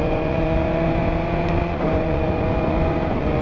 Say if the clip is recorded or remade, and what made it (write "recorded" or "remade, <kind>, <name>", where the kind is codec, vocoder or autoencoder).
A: remade, vocoder, Vocos